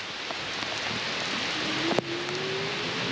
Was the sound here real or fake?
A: real